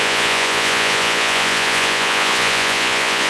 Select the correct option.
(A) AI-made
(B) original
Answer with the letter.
A